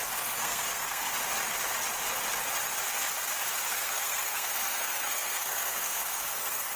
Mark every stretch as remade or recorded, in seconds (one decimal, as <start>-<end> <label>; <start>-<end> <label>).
0.0-1.1 remade; 1.1-3.7 recorded; 3.7-6.8 remade